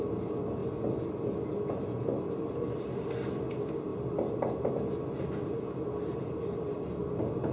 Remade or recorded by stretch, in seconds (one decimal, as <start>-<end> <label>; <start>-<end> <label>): 0.0-7.5 recorded